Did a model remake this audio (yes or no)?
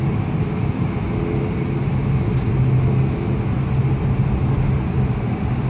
no